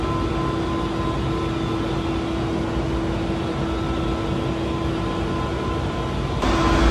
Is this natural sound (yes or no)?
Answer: yes